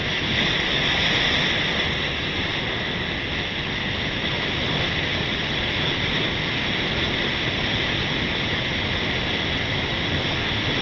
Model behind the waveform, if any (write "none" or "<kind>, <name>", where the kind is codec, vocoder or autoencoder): none